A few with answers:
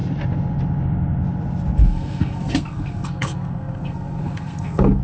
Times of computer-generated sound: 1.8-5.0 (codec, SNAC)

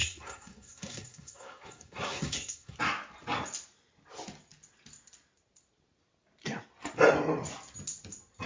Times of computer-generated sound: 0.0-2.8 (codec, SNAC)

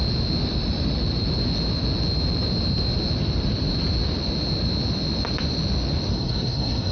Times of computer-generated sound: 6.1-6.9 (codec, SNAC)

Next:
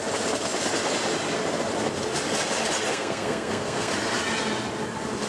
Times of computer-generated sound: 2.9-3.9 (codec, SNAC)

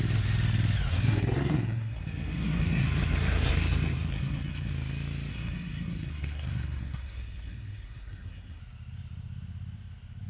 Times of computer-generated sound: 0.9-4.7 (codec, SNAC); 5.3-8.6